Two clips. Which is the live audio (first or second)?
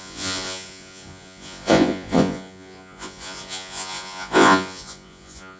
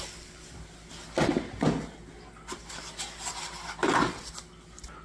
second